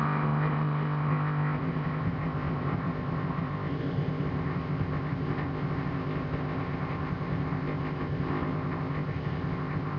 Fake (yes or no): yes